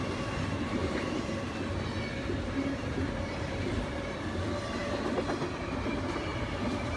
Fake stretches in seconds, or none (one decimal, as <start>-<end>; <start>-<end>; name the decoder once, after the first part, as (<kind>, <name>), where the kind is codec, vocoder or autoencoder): 0.0-0.8 (vocoder, BigVGAN v2); 2.9-4.8; 5.8-6.3